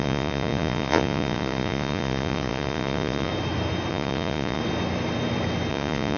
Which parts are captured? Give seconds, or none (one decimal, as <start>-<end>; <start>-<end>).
3.3-3.9; 4.6-5.7